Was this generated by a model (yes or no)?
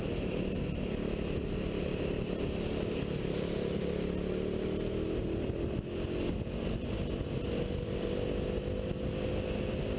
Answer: no